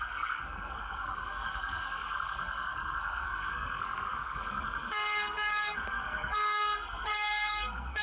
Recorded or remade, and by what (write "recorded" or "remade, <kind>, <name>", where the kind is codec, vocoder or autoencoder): remade, codec, SNAC